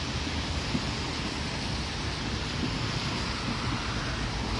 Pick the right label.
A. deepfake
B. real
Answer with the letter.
B